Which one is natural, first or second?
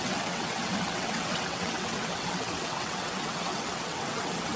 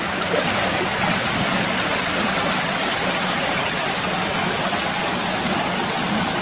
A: second